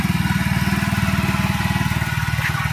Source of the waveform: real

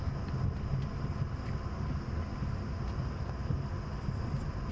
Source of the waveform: real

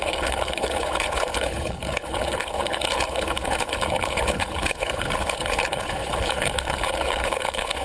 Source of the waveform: fake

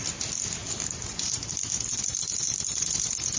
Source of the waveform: fake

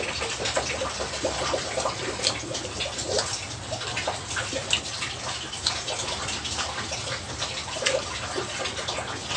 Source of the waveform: real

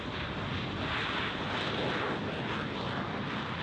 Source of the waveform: real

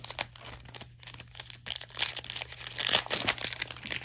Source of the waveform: real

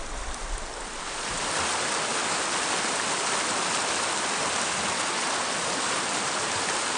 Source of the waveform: real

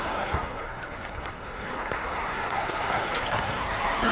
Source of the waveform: fake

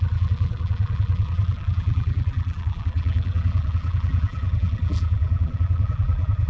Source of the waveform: fake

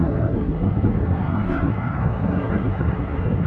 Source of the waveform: fake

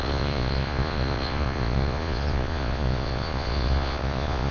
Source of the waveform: fake